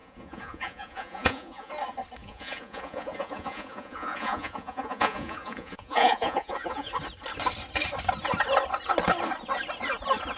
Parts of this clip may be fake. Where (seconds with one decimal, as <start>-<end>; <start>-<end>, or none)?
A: 0.0-1.7; 2.2-6.9